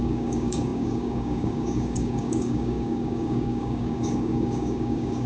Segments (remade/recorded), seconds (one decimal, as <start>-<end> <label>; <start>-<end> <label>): 0.0-5.3 remade